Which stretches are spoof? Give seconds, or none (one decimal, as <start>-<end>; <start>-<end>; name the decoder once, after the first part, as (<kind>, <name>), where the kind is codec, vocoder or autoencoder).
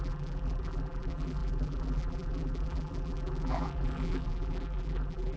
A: 0.0-5.4 (vocoder, BigVGAN v2)